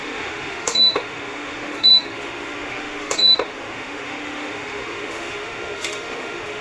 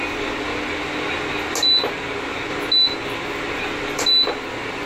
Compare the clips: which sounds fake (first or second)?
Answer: first